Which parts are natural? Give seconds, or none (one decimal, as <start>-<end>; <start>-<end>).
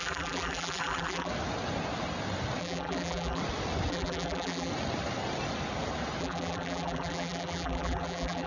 1.3-2.6; 3.4-3.9; 4.7-6.2